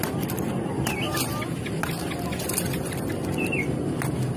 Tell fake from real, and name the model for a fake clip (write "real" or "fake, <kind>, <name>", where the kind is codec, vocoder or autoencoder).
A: real